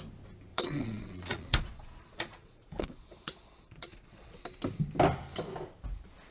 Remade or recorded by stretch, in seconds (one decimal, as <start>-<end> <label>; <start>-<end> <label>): 0.0-0.5 recorded; 0.5-4.3 remade; 4.3-6.3 recorded